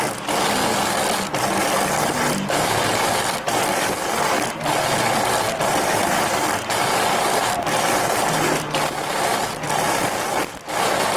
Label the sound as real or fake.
real